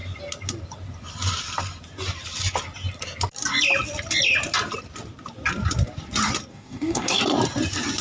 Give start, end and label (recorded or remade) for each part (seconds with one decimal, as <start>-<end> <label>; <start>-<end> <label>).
0.0-6.5 recorded; 6.5-7.2 remade; 7.2-8.0 recorded